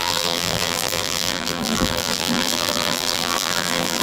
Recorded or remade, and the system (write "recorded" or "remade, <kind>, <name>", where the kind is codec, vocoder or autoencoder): remade, vocoder, BigVGAN v2